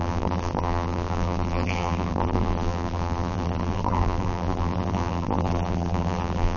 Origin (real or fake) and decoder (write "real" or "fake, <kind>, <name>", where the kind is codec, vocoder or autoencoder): fake, vocoder, BigVGAN v2